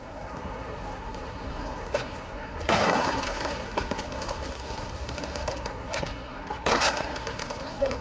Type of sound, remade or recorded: remade